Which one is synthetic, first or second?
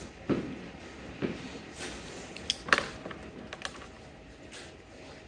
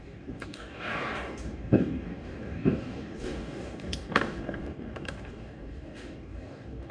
second